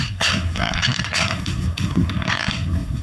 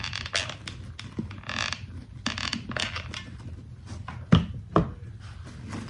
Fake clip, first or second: first